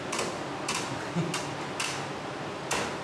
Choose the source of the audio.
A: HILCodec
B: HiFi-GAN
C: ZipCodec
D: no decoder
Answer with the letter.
D